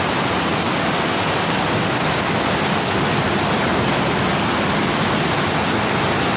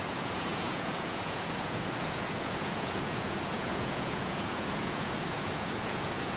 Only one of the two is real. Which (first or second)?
first